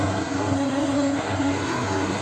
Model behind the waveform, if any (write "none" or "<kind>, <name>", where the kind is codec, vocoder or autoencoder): codec, SNAC